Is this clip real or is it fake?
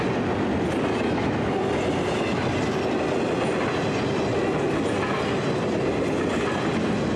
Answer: real